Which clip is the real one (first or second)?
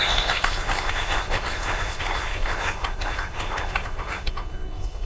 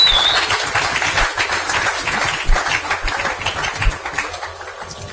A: second